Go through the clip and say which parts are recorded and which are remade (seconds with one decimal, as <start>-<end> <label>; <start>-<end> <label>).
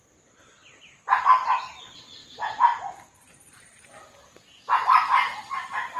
0.0-2.2 recorded; 2.2-4.0 remade; 4.0-6.0 recorded